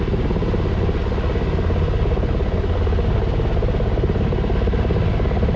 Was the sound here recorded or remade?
recorded